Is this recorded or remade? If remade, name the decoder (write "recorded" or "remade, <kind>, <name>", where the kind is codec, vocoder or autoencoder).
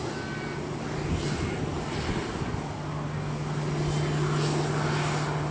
recorded